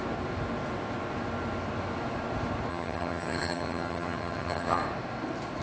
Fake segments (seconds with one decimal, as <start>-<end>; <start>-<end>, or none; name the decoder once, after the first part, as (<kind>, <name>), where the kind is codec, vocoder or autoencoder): 2.7-4.8 (vocoder, HiFi-GAN)